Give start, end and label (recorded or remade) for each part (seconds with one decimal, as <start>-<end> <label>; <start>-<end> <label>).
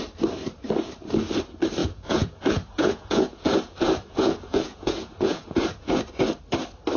0.0-1.8 recorded; 1.8-6.0 remade; 6.0-7.0 recorded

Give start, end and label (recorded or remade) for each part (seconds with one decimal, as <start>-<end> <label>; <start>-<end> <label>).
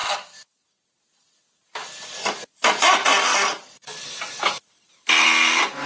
0.0-5.9 recorded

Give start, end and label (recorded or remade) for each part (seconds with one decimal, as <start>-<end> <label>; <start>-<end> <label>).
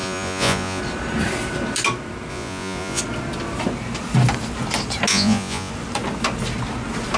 0.0-0.8 remade; 0.8-2.3 recorded; 2.3-3.0 remade; 3.0-5.1 recorded; 5.1-5.7 remade; 5.7-7.2 recorded